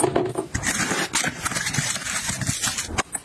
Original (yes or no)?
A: yes